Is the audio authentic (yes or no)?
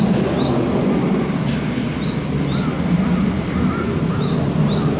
yes